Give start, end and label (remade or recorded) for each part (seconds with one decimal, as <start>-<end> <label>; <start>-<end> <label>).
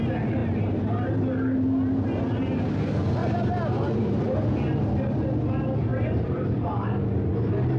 0.0-0.4 recorded; 0.4-1.1 remade; 1.1-3.2 recorded; 3.2-4.5 remade; 4.5-5.9 recorded; 5.9-7.0 remade; 7.0-7.8 recorded